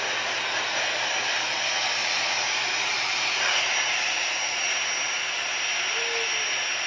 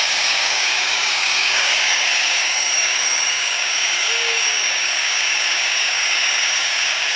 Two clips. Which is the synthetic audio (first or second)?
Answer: second